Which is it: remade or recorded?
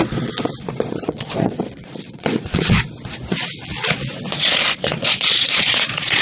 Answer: remade